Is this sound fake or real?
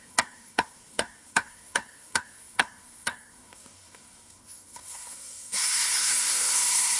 fake